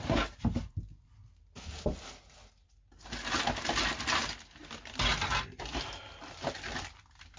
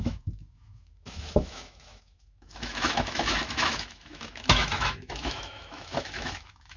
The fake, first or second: second